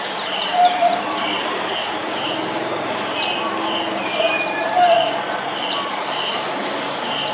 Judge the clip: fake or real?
real